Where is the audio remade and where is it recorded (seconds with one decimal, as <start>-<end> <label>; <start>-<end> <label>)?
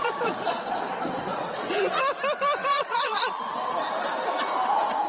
0.0-0.8 remade; 0.8-1.3 recorded; 1.3-2.0 remade; 2.0-2.7 recorded; 2.7-3.4 remade; 3.4-5.1 recorded